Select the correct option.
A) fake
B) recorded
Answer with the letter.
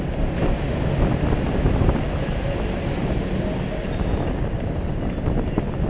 B